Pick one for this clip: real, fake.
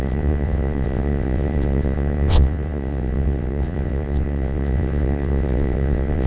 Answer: fake